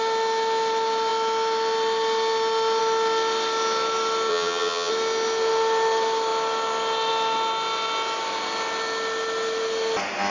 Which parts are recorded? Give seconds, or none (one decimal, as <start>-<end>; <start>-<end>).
0.0-4.3; 4.9-10.3